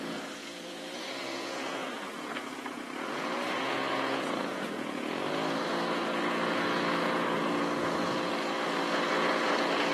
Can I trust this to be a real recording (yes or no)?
no